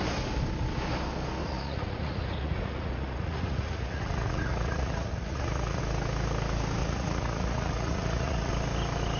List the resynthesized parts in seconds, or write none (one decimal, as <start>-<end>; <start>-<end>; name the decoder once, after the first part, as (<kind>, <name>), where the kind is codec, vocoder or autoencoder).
1.4-5.8 (vocoder, Vocos); 6.8-8.5